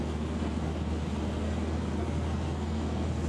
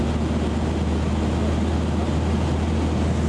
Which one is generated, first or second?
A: first